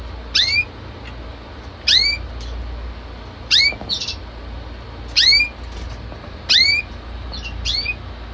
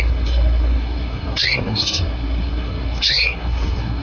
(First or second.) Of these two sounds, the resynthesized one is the second